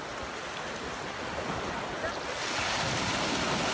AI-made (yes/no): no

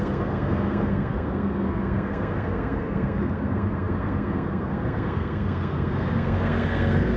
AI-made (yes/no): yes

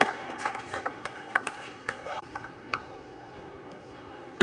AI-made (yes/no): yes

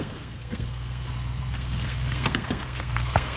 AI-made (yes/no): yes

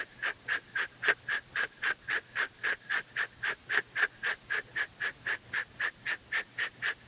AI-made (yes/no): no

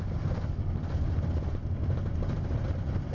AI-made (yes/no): no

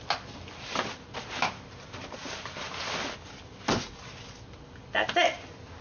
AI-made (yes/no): no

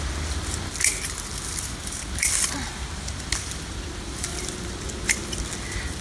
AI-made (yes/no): no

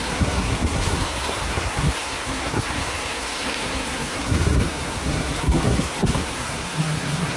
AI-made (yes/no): yes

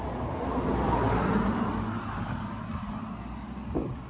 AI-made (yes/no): no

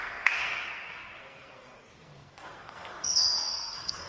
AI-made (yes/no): yes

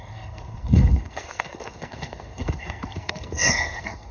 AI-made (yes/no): yes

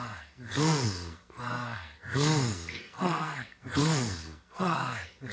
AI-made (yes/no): yes